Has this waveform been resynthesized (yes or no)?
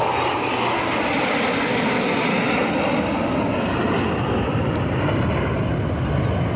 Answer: no